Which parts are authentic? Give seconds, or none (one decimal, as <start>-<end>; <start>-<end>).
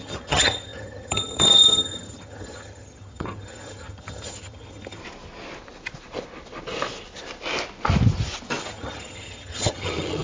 5.0-8.6